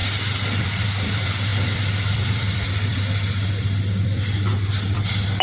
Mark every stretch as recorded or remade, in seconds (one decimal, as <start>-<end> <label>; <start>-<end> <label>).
0.0-0.6 recorded; 0.6-5.4 remade